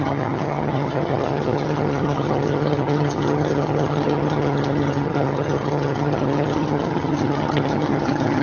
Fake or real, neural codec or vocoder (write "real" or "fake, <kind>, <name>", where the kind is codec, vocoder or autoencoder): fake, vocoder, HiFi-GAN